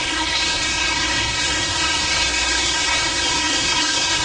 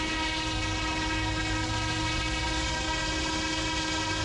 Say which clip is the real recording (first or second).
second